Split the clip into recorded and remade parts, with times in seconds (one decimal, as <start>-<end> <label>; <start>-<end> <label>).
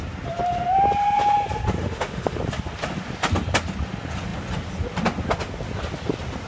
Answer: 0.0-1.8 recorded; 1.8-2.4 remade; 2.4-6.5 recorded